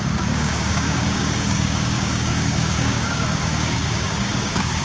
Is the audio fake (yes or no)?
yes